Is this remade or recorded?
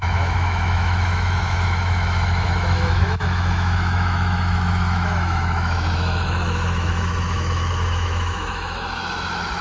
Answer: remade